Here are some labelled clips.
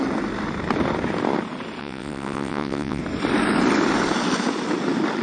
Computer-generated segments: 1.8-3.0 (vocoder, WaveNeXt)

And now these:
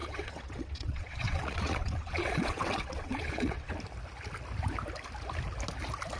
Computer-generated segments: 0.0-3.7 (vocoder, WaveNeXt)